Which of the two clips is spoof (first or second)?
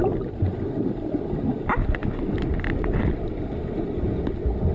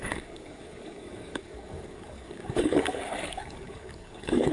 second